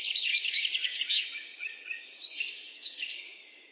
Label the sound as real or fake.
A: fake